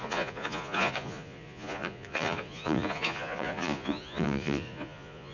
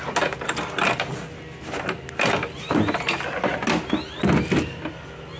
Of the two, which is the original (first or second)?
second